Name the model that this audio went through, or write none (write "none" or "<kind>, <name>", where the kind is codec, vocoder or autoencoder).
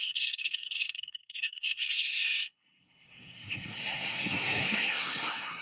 codec, SNAC